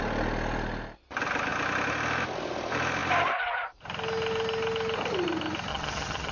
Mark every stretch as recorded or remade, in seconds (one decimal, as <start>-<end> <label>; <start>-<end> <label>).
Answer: 0.0-5.7 recorded; 5.7-6.3 remade